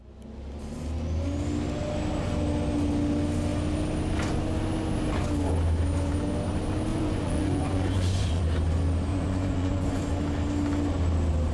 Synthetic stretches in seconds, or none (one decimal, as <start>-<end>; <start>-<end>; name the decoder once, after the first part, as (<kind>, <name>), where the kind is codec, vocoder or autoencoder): 6.9-8.4 (vocoder, Vocos); 9.1-10.0